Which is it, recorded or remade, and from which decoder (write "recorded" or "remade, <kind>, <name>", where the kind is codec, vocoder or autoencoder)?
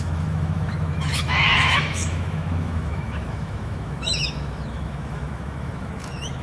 remade, autoencoder, DAC-VAE